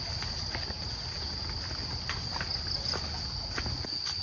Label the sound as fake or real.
real